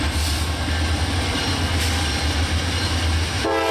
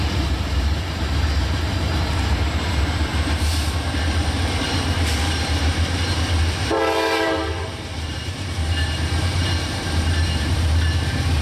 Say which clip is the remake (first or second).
second